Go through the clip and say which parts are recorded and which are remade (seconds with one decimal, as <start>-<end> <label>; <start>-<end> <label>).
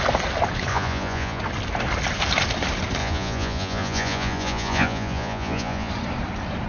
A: 0.0-0.7 recorded; 0.7-1.4 remade; 1.4-3.0 recorded; 3.0-5.9 remade; 5.9-6.7 recorded